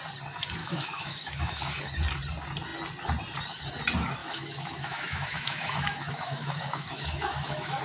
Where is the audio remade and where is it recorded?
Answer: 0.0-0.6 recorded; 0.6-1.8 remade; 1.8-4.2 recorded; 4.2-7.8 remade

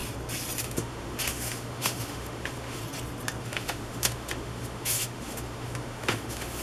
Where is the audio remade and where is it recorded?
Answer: 0.0-0.6 recorded; 0.6-2.8 remade; 2.8-3.4 recorded; 3.4-6.6 remade

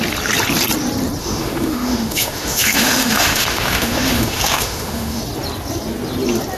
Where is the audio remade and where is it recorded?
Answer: 0.0-1.2 recorded; 1.2-5.2 remade; 5.2-6.6 recorded

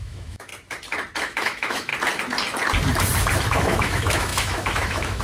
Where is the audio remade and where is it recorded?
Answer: 0.0-0.5 remade; 0.5-1.2 recorded; 1.2-1.9 remade; 1.9-3.5 recorded; 3.5-5.2 remade

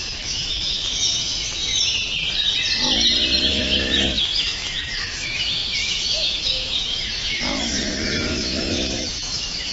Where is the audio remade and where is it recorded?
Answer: 0.0-1.7 remade; 1.7-3.5 recorded; 3.5-9.7 remade

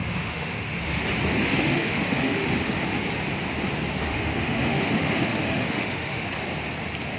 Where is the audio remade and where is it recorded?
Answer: 0.0-1.0 remade; 1.0-1.5 recorded; 1.5-2.9 remade; 2.9-3.9 recorded; 3.9-6.3 remade; 6.3-7.2 recorded

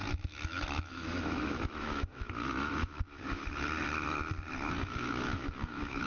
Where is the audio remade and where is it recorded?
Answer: 0.0-3.4 remade; 3.4-5.0 recorded; 5.0-6.1 remade